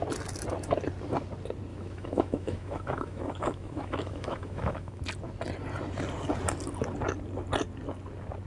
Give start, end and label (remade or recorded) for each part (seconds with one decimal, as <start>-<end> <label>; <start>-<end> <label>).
0.0-1.7 recorded; 1.7-5.0 remade; 5.0-8.5 recorded